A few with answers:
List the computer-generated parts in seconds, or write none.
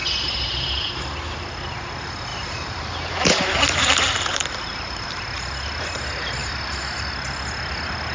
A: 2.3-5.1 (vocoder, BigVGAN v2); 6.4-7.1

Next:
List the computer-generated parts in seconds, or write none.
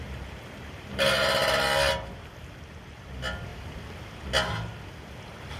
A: none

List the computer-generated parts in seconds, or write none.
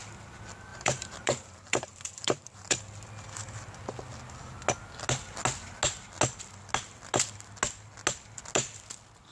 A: 0.7-2.8 (vocoder, BigVGAN v2)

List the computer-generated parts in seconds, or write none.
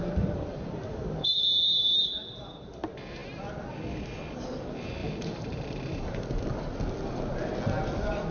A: 0.5-2.0 (vocoder, BigVGAN v2); 5.0-6.4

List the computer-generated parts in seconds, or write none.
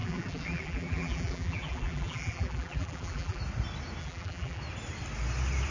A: 0.0-3.4 (vocoder, BigVGAN v2); 4.0-4.6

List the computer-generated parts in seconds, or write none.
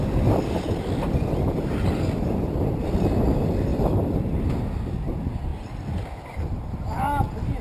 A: 3.7-4.9 (vocoder, BigVGAN v2)